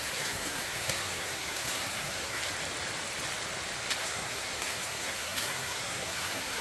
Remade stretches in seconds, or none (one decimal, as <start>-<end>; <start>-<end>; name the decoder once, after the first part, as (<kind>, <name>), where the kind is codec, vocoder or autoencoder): 0.0-2.4 (codec, SNAC); 4.0-6.6